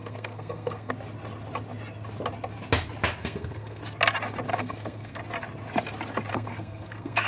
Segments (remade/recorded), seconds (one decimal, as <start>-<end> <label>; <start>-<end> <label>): 0.0-0.9 remade; 0.9-3.2 recorded; 3.2-3.8 remade; 3.8-4.5 recorded; 4.5-5.2 remade; 5.2-6.3 recorded; 6.3-7.3 remade

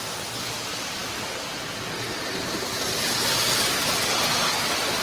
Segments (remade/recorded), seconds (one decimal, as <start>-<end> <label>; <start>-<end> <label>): 0.0-5.0 recorded

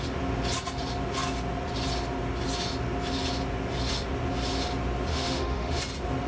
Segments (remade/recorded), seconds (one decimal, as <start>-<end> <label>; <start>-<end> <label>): 0.0-5.1 recorded; 5.1-5.8 remade; 5.8-6.3 recorded

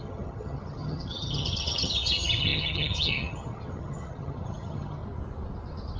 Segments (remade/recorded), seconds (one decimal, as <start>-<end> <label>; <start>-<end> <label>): 0.0-5.0 remade; 5.0-6.0 recorded

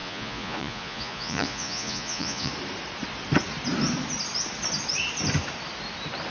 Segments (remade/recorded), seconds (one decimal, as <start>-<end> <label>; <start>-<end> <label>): 0.0-2.5 remade; 2.5-6.3 recorded

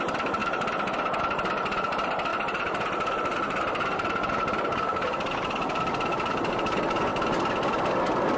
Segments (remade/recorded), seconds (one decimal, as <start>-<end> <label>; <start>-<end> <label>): 0.0-0.4 recorded; 0.4-1.2 remade; 1.2-2.3 recorded; 2.3-6.5 remade; 6.5-7.1 recorded; 7.1-8.0 remade; 8.0-8.4 recorded

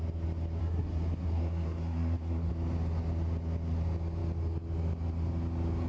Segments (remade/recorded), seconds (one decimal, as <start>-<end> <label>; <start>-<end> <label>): 0.0-0.6 recorded; 0.6-2.5 remade; 2.5-5.9 recorded